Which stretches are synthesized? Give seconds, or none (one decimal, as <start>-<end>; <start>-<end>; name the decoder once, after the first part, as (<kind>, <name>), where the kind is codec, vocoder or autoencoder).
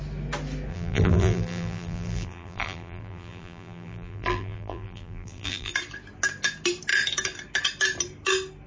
0.7-5.7 (vocoder, BigVGAN v2)